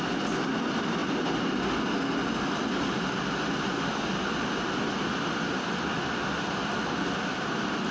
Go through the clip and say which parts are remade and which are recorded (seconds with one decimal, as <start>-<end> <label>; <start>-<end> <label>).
0.0-7.9 recorded